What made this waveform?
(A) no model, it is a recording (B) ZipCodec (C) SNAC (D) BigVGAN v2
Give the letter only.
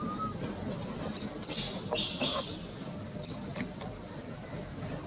A